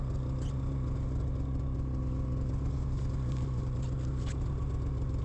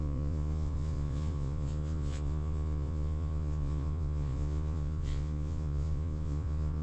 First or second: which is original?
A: first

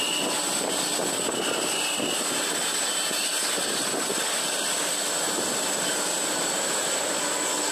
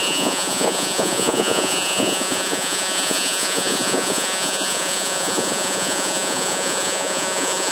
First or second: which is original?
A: first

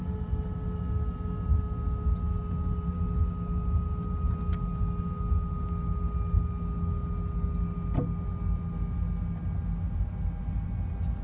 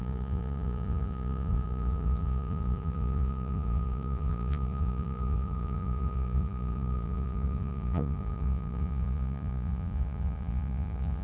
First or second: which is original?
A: first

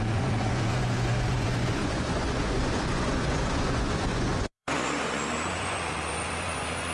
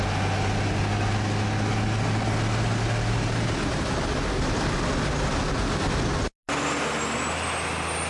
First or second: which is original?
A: second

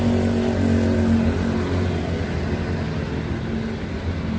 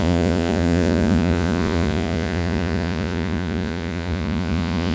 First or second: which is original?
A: first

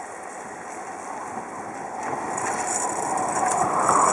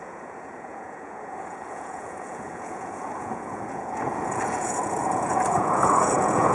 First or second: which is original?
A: first